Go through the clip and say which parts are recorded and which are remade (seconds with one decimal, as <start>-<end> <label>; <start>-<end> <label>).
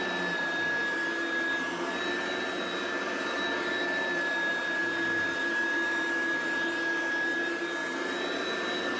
0.0-9.0 recorded